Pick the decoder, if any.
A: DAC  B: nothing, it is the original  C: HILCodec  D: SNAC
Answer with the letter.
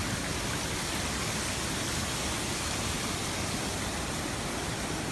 B